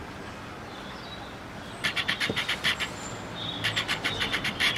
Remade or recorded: recorded